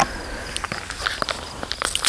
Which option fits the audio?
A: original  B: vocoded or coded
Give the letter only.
A